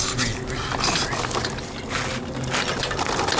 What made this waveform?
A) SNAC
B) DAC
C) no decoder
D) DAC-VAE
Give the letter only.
C